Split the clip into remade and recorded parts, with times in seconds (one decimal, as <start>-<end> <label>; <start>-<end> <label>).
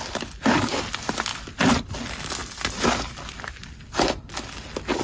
0.0-5.0 recorded